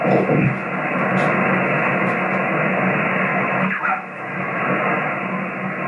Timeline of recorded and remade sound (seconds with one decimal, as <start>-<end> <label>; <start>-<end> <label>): 0.0-3.3 recorded; 3.3-4.6 remade; 4.6-5.9 recorded